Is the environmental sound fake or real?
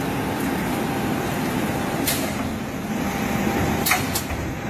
fake